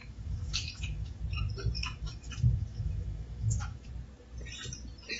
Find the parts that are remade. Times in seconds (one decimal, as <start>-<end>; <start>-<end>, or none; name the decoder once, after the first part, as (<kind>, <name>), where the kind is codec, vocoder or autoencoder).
0.0-1.2 (autoencoder, DAC-VAE); 1.8-3.9